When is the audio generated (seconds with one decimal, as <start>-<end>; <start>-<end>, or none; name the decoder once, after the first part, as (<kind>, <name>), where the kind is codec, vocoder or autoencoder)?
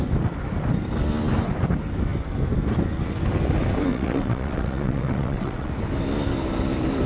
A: 3.9-5.7 (vocoder, WaveNeXt)